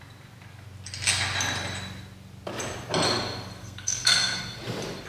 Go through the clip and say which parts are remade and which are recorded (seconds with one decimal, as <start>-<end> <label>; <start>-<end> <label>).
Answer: 0.0-3.6 recorded; 3.6-4.4 remade; 4.4-5.1 recorded